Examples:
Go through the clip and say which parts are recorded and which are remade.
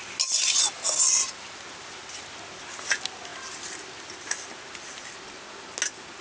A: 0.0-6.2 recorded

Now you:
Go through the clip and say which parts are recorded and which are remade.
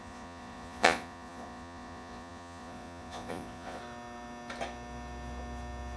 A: 0.0-3.8 remade; 3.8-6.0 recorded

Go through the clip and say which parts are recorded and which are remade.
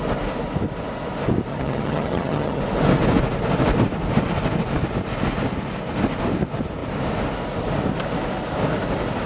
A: 0.0-1.5 recorded; 1.5-2.6 remade; 2.6-9.3 recorded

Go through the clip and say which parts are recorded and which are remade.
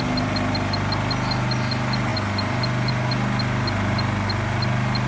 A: 0.0-5.1 recorded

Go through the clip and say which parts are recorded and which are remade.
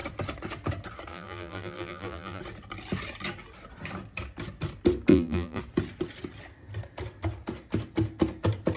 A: 0.0-1.1 recorded; 1.1-2.4 remade; 2.4-5.1 recorded; 5.1-5.6 remade; 5.6-8.8 recorded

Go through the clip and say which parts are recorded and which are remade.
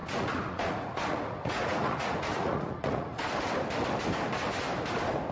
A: 0.0-3.2 remade; 3.2-5.3 recorded